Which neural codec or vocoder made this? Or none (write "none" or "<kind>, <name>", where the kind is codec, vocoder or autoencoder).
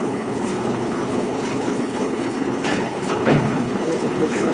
codec, HILCodec